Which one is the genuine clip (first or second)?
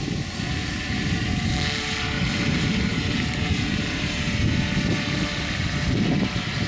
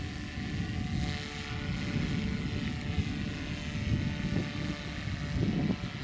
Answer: second